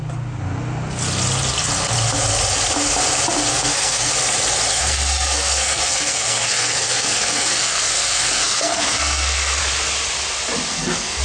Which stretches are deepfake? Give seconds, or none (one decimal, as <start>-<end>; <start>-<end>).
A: 3.5-4.1; 4.7-9.6; 10.7-11.2